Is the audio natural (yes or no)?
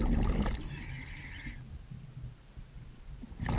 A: yes